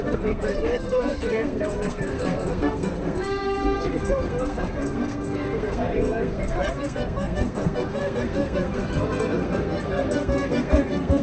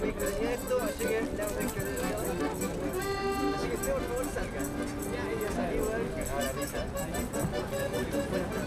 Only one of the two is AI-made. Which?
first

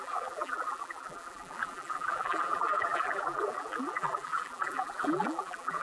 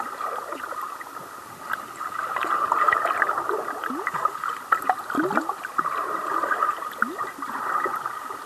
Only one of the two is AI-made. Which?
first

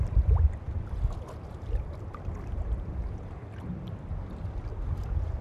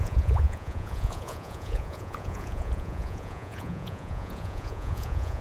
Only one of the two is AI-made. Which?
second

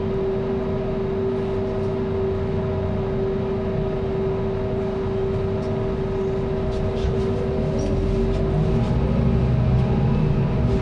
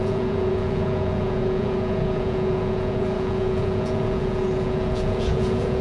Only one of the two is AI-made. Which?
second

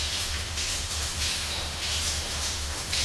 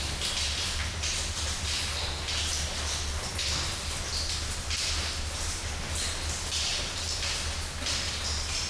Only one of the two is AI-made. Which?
first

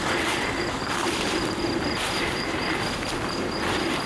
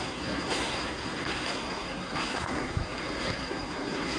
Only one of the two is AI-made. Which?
second